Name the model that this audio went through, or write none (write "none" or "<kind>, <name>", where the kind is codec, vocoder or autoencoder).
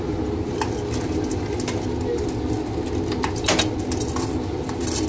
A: none